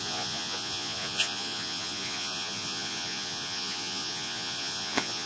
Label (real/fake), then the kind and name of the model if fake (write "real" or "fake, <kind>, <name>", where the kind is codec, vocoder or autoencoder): fake, vocoder, Vocos